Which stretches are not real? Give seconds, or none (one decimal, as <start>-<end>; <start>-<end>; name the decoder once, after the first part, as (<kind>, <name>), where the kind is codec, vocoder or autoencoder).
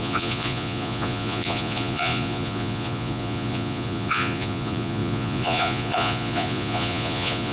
0.0-7.5 (vocoder, Vocos)